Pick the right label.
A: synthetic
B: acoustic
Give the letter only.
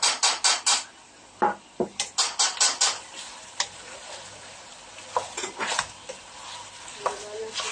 B